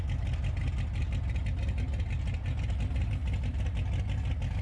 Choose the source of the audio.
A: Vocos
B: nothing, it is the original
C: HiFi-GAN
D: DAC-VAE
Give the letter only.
B